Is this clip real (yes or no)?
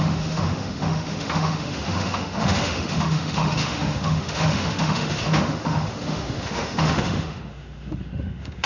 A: no